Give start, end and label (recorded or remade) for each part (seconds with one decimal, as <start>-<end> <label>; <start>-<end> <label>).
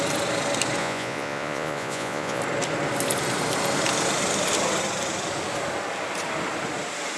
0.0-0.8 recorded; 0.8-2.4 remade; 2.4-7.2 recorded